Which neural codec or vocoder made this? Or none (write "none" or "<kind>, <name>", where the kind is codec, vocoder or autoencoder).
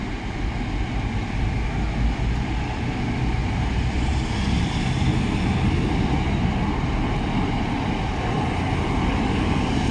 none